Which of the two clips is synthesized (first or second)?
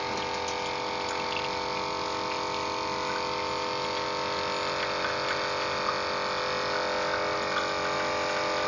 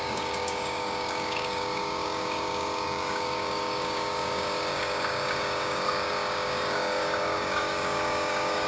second